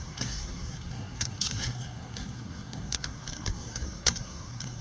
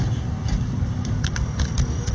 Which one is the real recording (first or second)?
second